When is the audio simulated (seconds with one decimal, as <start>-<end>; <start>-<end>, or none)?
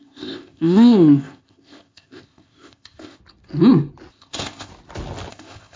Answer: 0.0-3.2; 4.1-4.7; 5.3-5.8